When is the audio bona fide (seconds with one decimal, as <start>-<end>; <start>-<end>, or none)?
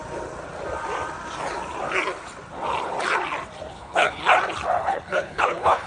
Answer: 0.0-3.7; 4.2-4.8